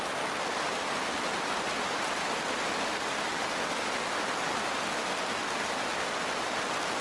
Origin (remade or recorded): recorded